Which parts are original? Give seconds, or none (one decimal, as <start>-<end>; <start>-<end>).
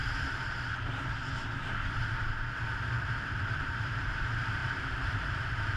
0.0-3.2; 4.6-5.1